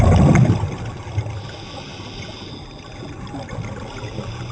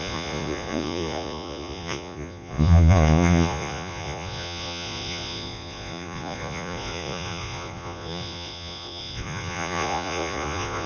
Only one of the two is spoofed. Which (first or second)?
second